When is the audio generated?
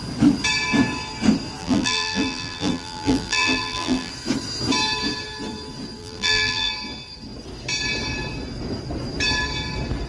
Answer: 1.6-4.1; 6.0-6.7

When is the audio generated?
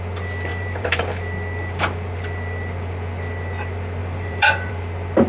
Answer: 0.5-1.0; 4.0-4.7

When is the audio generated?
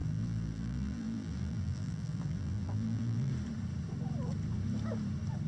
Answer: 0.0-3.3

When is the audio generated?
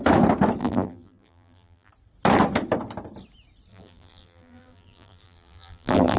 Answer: 0.6-1.9; 3.7-6.2